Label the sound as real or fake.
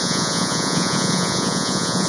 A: fake